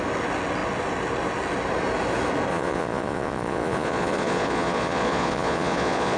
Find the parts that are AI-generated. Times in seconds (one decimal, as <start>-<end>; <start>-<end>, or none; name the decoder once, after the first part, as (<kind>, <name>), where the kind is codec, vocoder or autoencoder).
2.5-6.2 (vocoder, Vocos)